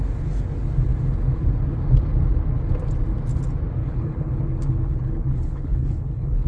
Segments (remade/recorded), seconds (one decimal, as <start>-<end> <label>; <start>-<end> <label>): 0.0-3.8 recorded; 3.8-6.5 remade

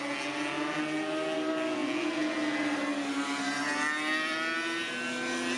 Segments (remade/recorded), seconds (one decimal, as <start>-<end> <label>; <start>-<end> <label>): 0.0-5.6 recorded

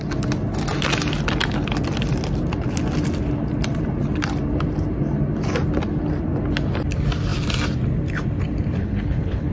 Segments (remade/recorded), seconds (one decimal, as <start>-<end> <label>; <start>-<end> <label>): 0.0-8.8 recorded; 8.8-9.5 remade

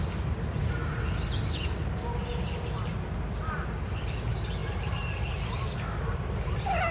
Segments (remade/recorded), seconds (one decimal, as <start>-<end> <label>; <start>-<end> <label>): 0.0-6.9 recorded

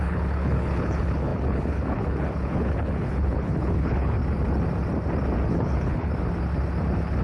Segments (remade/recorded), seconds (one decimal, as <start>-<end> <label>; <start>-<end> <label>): 0.0-4.2 remade; 4.2-5.5 recorded; 5.5-6.1 remade; 6.1-7.2 recorded

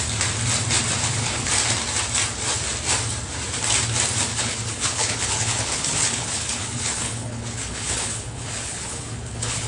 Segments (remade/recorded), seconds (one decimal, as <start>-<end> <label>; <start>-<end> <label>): 0.0-1.0 recorded; 1.0-1.5 remade; 1.5-4.3 recorded; 4.3-9.7 remade

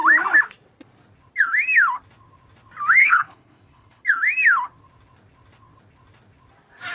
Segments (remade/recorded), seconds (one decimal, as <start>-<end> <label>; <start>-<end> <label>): 0.0-3.0 recorded; 3.0-4.0 remade; 4.0-6.9 recorded